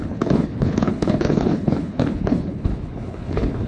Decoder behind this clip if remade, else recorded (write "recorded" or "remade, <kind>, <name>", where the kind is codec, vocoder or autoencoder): remade, codec, HILCodec